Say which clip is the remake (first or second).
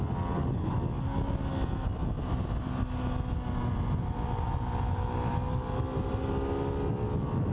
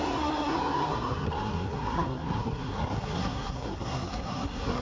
second